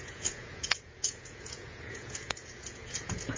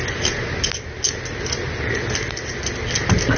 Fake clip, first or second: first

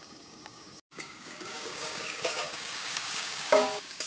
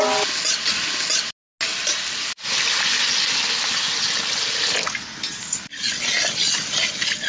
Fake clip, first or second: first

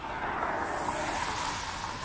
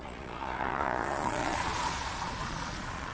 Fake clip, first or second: second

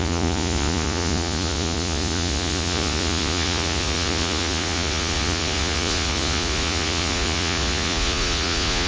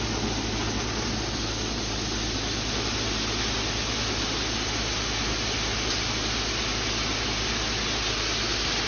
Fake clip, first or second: first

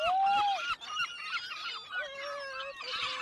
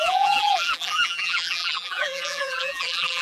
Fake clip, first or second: second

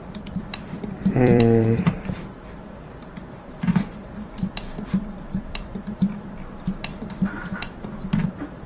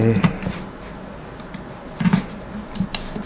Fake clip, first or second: first